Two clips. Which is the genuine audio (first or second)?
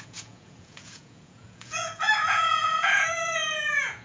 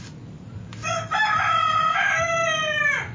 second